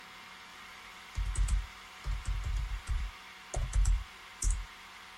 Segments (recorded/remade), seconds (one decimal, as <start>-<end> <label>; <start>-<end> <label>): 0.0-0.5 recorded; 0.5-3.1 remade; 3.1-3.6 recorded; 3.6-5.2 remade